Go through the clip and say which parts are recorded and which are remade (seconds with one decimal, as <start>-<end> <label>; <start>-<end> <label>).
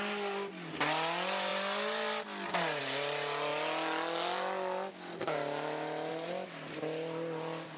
0.0-7.8 recorded